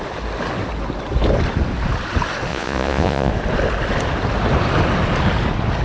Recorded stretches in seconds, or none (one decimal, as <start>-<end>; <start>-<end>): 0.0-2.5; 3.3-5.8